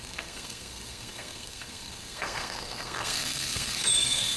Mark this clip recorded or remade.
remade